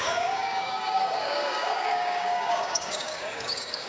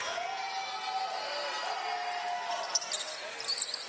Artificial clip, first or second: first